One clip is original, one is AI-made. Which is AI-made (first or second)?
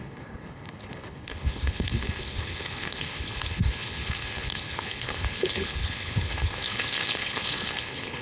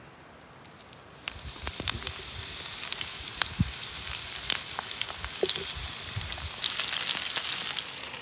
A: first